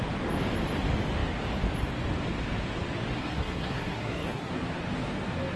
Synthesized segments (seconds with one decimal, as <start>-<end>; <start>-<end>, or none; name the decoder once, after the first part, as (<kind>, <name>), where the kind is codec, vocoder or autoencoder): 3.2-4.5 (codec, SNAC)